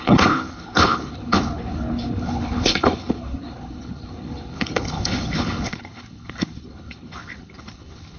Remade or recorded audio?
remade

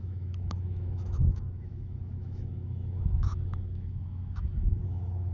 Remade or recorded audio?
remade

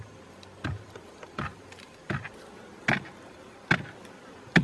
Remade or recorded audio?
recorded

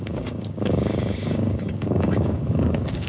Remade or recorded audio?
remade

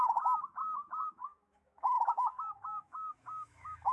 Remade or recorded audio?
remade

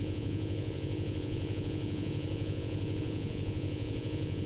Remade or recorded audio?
remade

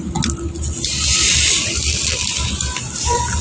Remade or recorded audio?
recorded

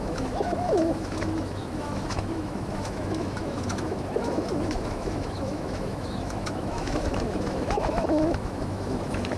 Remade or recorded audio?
remade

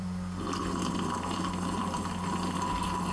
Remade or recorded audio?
remade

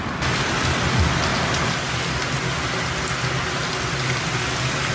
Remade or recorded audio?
recorded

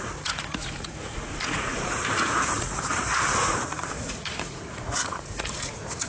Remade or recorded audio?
remade